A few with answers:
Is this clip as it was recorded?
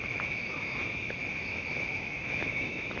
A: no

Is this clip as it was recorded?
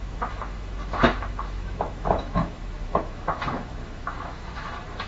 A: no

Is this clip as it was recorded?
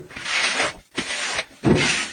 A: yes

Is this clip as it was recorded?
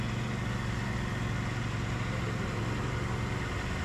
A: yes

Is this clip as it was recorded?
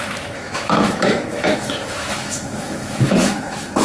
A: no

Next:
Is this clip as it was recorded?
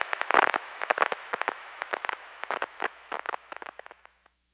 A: no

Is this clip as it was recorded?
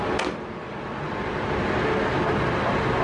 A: yes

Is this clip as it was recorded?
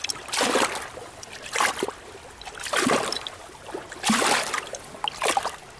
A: yes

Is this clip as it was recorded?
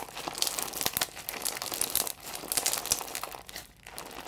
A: yes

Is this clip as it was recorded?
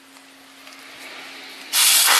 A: yes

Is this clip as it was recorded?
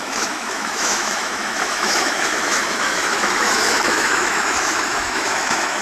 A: no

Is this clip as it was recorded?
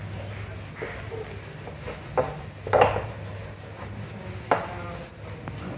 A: yes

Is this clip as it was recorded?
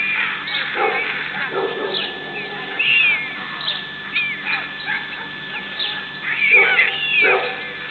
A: yes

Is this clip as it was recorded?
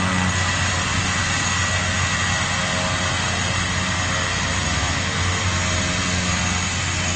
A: yes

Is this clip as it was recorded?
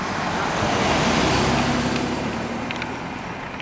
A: yes